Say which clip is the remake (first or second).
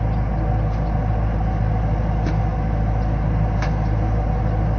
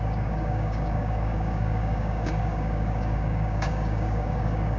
second